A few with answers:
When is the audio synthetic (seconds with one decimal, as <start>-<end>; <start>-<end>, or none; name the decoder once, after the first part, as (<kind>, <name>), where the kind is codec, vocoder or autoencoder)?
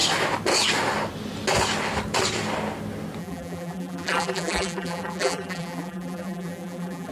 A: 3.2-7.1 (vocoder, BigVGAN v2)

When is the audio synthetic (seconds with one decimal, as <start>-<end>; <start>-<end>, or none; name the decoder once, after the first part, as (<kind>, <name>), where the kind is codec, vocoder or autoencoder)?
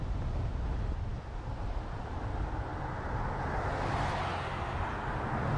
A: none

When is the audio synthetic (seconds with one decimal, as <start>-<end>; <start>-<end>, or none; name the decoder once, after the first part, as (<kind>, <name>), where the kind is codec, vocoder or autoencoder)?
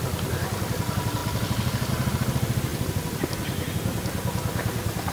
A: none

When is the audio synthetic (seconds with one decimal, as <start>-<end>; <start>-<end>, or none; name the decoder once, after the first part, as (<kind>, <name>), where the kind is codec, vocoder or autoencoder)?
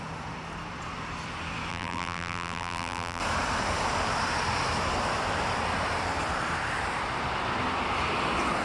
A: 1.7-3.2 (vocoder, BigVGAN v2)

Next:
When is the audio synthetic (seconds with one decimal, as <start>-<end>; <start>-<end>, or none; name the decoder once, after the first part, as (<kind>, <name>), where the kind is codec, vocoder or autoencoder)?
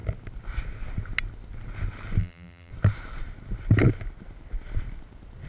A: 2.2-2.7 (vocoder, BigVGAN v2)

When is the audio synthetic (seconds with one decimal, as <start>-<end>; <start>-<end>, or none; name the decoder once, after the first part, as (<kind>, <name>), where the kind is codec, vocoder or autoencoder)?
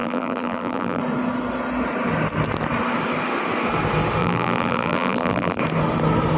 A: 0.0-1.0 (vocoder, BigVGAN v2); 4.2-5.6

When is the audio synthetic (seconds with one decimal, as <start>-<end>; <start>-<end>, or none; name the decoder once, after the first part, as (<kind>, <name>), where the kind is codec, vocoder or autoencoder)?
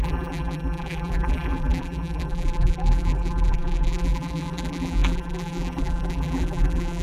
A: 0.0-7.0 (vocoder, BigVGAN v2)